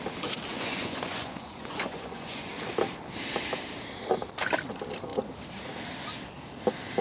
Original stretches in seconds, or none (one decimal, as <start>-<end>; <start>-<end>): 0.0-0.5; 2.5-7.0